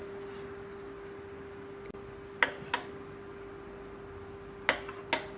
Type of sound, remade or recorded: recorded